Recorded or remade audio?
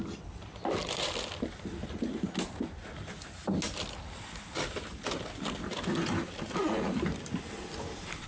recorded